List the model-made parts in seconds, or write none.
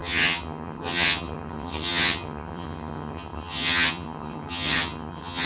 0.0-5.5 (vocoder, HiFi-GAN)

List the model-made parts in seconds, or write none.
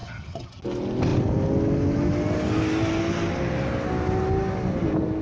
0.0-0.6 (vocoder, HiFi-GAN)